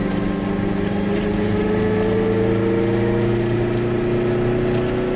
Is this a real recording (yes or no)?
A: yes